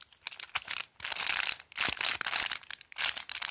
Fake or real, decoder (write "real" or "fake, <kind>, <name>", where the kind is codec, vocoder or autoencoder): real